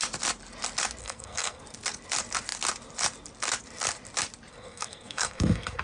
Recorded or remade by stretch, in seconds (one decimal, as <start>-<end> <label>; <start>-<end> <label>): 0.0-1.0 recorded; 1.0-1.6 remade; 1.6-4.5 recorded; 4.5-5.8 remade